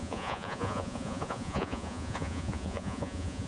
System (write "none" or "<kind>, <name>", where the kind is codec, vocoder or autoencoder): vocoder, Vocos